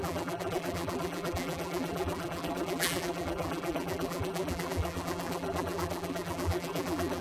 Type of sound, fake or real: fake